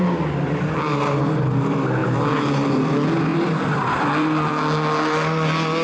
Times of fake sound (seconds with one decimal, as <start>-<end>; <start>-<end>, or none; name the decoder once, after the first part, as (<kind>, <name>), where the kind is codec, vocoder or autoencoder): 3.3-4.5 (vocoder, BigVGAN v2)